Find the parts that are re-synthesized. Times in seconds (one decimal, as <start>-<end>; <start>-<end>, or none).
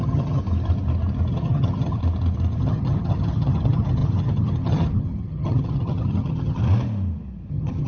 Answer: 0.0-0.4; 1.3-2.0; 2.6-6.6; 7.5-7.9